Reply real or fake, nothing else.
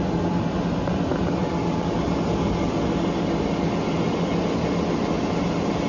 real